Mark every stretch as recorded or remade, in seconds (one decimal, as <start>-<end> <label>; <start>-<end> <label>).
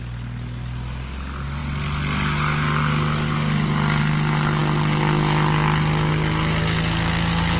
0.0-7.6 recorded